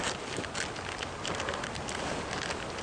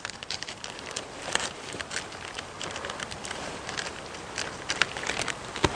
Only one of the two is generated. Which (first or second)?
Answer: second